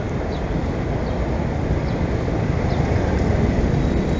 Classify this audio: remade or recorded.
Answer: recorded